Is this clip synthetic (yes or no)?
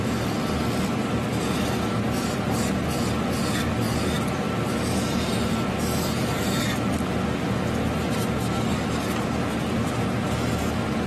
no